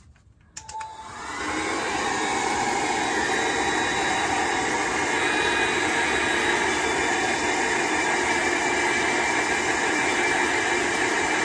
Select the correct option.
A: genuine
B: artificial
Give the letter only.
A